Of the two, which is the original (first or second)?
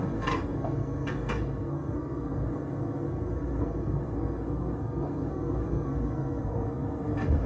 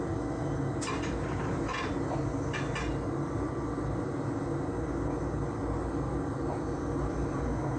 second